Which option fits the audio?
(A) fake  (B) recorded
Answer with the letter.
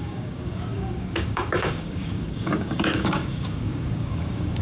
A